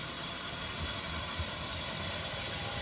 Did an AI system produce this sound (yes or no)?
no